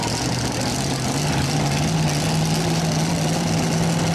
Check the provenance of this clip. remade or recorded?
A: recorded